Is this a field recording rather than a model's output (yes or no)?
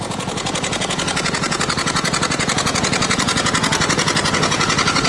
no